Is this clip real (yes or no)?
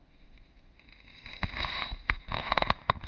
no